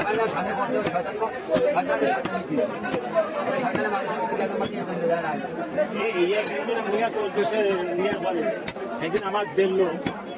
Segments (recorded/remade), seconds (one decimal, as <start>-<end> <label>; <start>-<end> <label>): 0.0-10.4 recorded